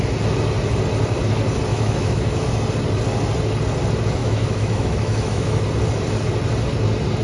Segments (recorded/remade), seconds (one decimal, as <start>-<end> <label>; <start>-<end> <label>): 0.0-1.7 recorded; 1.7-2.5 remade; 2.5-4.2 recorded; 4.2-5.6 remade; 5.6-7.2 recorded